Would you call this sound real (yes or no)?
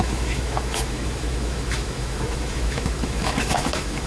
no